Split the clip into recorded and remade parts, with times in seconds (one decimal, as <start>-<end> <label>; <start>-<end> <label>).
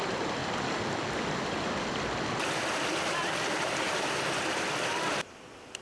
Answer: 0.0-5.8 recorded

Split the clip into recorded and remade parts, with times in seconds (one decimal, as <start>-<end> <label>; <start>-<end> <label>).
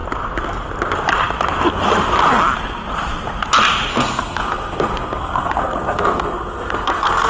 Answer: 0.0-3.9 recorded; 3.9-7.3 remade